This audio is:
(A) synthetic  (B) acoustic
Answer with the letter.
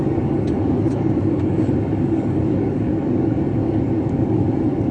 A